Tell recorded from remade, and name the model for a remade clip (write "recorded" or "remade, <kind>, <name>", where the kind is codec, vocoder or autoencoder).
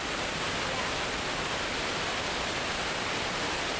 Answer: recorded